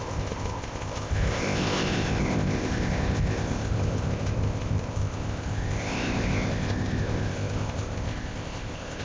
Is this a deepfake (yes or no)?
yes